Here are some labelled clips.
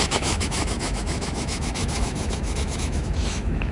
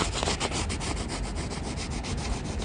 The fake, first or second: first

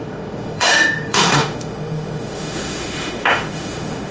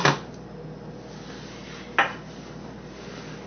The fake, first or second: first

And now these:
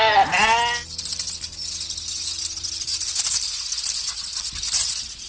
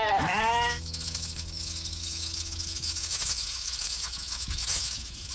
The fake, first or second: second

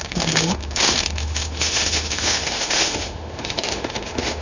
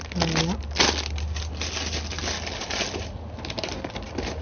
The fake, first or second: first